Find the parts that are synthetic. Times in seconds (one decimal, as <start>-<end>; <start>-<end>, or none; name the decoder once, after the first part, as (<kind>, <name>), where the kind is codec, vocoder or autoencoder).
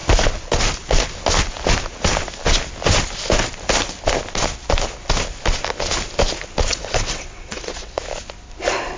6.7-8.0 (vocoder, WaveNeXt)